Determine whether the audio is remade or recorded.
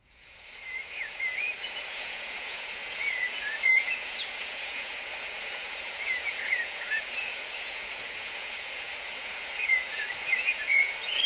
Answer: remade